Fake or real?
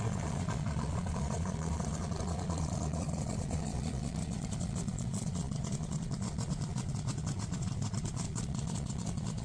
fake